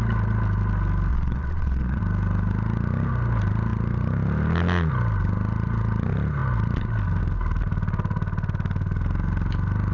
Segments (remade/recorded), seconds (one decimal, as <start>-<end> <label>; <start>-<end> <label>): 0.0-1.1 recorded; 1.1-2.0 remade; 2.0-9.9 recorded